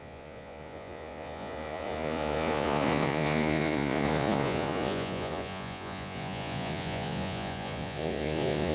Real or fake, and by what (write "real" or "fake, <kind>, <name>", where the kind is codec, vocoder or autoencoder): fake, vocoder, Vocos